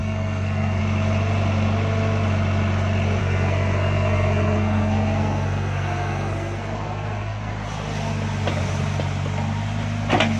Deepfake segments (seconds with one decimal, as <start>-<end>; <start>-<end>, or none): 0.0-0.8; 3.2-7.5